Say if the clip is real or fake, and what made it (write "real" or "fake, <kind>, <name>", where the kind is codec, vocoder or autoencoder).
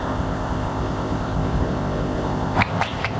fake, codec, ZipCodec